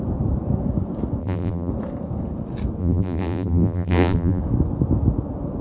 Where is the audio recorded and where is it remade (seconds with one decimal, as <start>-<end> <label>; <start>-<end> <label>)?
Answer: 0.0-1.2 recorded; 1.2-1.7 remade; 1.7-2.8 recorded; 2.8-4.4 remade; 4.4-5.6 recorded